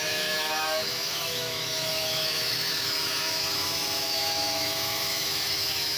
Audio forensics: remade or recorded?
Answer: remade